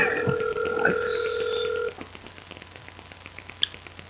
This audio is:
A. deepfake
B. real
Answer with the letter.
B